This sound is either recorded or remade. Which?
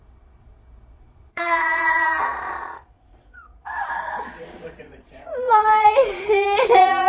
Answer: remade